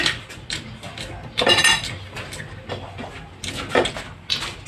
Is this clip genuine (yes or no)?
yes